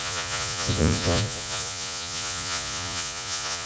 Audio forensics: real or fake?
fake